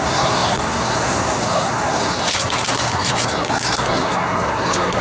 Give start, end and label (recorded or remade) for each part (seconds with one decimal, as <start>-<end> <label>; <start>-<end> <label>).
0.0-5.0 remade